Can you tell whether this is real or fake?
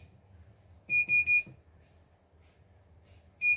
real